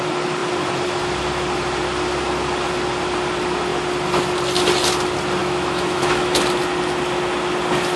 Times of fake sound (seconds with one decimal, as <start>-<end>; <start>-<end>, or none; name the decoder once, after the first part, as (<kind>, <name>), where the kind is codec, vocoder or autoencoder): 5.4-6.4 (autoencoder, DAC-VAE)